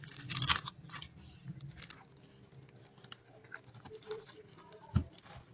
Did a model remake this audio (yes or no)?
no